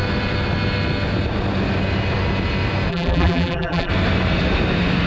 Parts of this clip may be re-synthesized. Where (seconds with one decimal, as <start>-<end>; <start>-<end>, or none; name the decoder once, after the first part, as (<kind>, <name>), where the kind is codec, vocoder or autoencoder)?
2.9-3.9 (vocoder, BigVGAN v2)